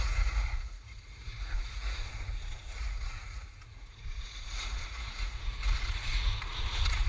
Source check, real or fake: fake